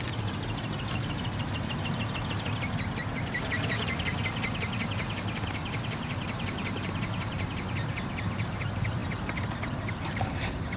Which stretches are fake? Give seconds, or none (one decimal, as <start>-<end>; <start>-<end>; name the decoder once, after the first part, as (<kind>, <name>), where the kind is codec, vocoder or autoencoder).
none